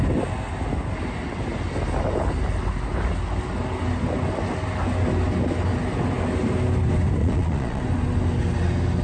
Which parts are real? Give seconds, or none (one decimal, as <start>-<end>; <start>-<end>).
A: 0.0-7.2; 7.8-9.0